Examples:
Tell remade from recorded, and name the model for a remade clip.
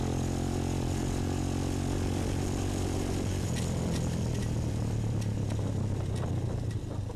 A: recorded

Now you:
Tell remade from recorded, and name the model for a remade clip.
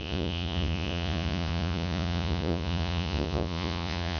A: remade, vocoder, Vocos